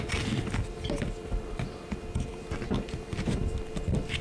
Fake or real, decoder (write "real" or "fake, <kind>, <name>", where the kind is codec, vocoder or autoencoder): fake, vocoder, BigVGAN v2